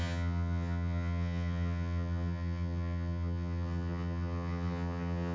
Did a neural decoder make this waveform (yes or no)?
yes